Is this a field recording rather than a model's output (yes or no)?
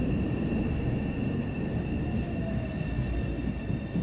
yes